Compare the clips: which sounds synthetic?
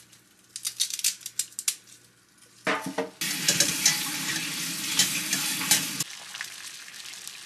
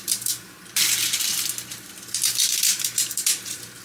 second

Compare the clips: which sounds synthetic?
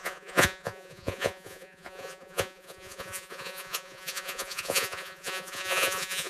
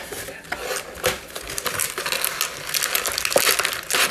first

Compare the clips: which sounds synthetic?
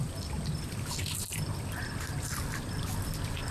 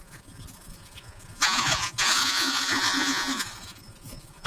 second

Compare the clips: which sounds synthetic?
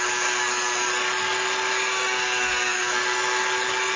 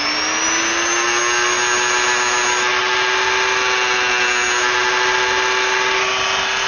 first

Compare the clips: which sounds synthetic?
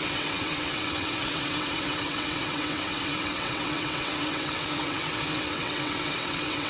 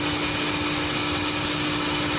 first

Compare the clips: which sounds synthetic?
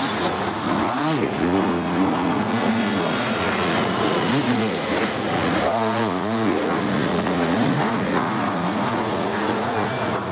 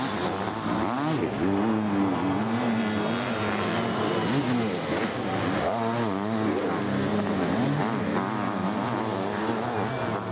first